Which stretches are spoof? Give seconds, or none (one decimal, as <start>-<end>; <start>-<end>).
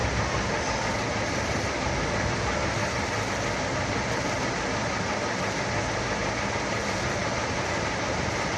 none